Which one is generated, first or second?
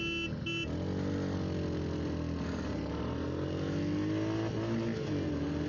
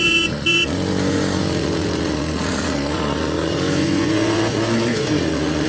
second